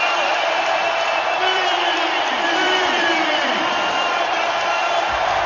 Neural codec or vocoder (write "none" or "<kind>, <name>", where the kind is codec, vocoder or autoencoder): vocoder, BigVGAN v2